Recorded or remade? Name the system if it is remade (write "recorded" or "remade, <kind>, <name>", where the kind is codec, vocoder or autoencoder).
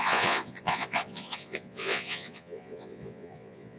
remade, vocoder, Vocos